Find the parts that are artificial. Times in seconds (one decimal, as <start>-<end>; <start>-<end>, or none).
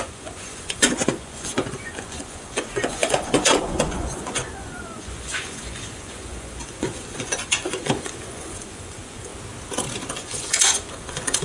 0.0-9.3; 10.1-11.4